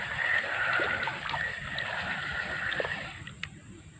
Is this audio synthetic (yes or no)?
no